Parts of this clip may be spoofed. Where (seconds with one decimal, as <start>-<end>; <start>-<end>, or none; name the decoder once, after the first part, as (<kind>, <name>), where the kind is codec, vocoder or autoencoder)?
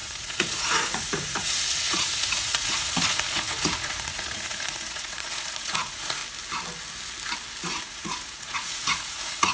0.0-6.2 (vocoder, Vocos); 7.6-9.5